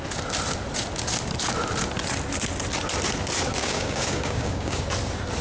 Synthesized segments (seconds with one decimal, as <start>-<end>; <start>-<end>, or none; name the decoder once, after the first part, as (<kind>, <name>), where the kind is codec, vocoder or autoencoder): 3.6-4.8 (codec, DAC)